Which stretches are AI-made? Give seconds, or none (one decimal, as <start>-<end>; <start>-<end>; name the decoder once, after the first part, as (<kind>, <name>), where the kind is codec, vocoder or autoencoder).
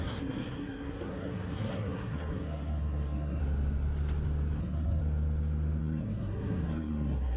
0.0-3.4 (codec, SNAC); 4.6-5.0; 5.8-7.4